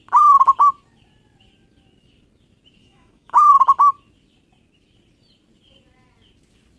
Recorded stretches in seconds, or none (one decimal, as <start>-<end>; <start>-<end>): 0.0-2.8; 3.5-6.8